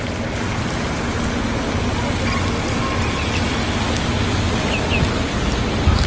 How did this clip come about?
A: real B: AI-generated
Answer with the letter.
A